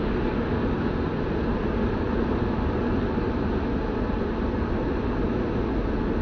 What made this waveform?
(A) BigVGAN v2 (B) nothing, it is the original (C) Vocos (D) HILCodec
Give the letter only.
B